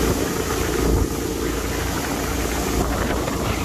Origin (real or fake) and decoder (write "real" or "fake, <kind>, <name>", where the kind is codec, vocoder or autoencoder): real